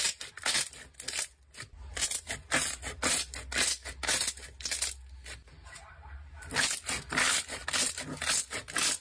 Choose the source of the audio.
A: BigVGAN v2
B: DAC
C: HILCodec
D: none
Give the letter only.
D